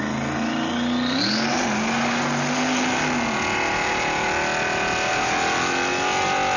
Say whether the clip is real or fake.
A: real